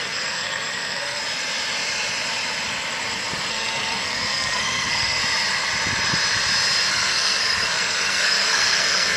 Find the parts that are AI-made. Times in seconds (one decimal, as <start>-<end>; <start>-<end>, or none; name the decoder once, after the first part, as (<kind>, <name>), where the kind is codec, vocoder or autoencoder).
0.0-1.2 (codec, SNAC); 3.5-5.2; 6.9-9.2